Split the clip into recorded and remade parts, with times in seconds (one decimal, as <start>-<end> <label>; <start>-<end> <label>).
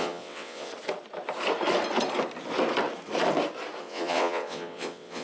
0.0-0.7 remade; 0.7-3.8 recorded; 3.8-5.2 remade